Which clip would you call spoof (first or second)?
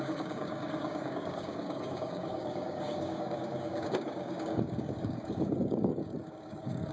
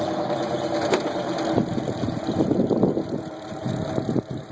first